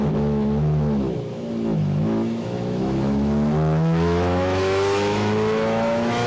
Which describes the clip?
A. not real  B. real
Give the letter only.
A